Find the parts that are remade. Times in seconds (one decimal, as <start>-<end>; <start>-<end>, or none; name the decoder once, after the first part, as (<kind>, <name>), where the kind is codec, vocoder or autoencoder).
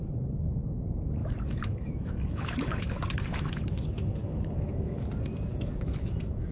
1.2-5.1 (autoencoder, DAC-VAE); 5.5-6.5